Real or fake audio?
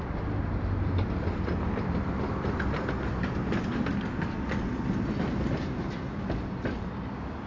real